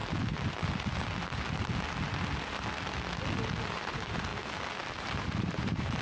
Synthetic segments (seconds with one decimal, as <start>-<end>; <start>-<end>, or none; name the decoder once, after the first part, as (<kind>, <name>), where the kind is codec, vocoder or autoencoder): 3.6-4.3 (vocoder, BigVGAN v2); 5.0-6.0